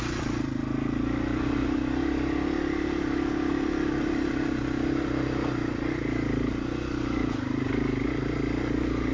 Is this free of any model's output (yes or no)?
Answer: yes